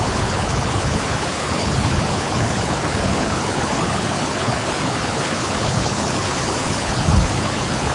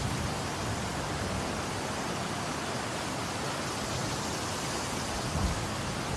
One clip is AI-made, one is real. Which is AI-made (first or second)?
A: first